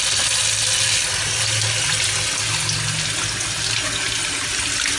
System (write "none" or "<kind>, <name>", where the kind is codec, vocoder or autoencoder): none